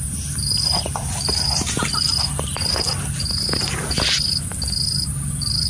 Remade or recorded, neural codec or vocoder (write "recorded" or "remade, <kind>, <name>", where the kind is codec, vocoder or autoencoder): recorded